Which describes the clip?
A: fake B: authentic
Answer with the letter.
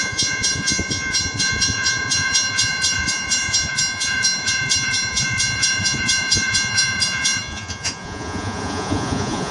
A